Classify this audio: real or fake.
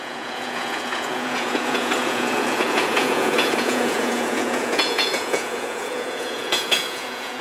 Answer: fake